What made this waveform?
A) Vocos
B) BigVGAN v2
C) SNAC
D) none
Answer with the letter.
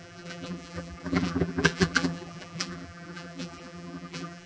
B